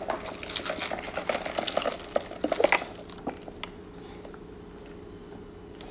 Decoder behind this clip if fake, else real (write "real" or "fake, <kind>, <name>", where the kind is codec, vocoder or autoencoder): real